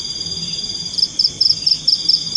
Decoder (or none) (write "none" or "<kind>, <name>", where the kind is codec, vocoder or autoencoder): none